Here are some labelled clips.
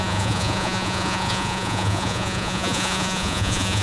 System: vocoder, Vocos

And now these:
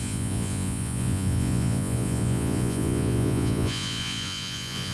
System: vocoder, Vocos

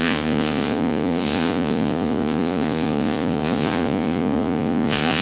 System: vocoder, Vocos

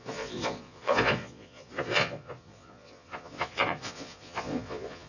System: vocoder, Vocos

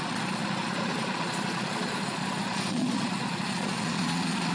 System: vocoder, Vocos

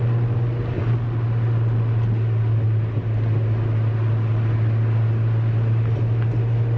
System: none